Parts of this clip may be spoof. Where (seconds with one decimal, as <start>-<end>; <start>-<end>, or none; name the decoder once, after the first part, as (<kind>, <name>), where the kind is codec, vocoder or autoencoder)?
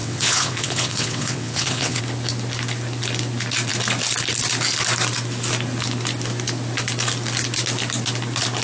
0.0-2.0 (vocoder, WaveNeXt)